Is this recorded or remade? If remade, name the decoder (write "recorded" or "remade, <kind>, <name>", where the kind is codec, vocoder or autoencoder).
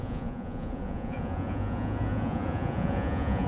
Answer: remade, vocoder, Vocos